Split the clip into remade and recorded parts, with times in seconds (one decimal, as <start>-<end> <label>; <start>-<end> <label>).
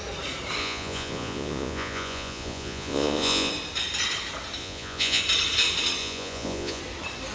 0.0-0.6 recorded; 0.6-3.5 remade; 3.5-4.6 recorded; 4.6-5.2 remade; 5.2-6.0 recorded; 6.0-6.8 remade; 6.8-7.3 recorded